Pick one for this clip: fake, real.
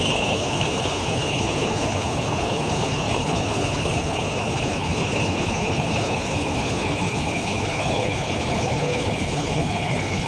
fake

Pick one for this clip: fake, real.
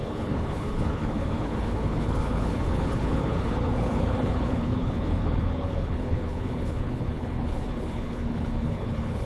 fake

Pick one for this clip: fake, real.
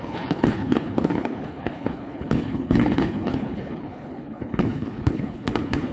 fake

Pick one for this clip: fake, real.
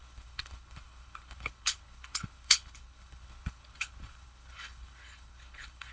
fake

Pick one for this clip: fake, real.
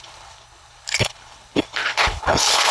fake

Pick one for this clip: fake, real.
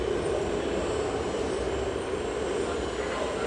real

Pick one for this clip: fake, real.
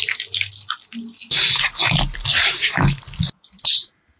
real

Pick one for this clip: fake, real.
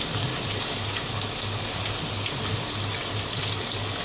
real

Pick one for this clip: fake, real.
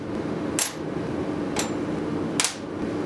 real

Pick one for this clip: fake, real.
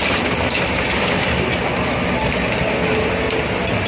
real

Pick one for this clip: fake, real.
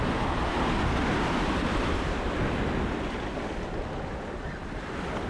real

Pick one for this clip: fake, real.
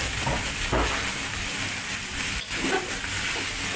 real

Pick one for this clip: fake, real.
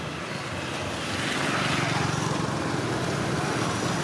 real